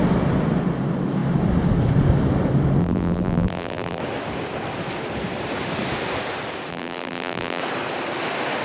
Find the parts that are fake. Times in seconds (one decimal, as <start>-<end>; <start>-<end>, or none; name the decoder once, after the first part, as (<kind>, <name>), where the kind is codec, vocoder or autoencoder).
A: 2.8-4.0 (vocoder, BigVGAN v2); 6.7-7.6